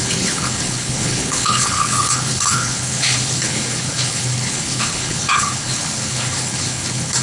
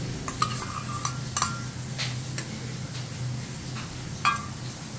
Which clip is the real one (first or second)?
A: second